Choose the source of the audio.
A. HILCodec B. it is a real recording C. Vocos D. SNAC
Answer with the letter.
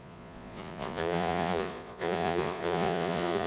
C